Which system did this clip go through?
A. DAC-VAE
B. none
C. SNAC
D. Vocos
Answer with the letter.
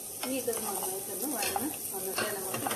B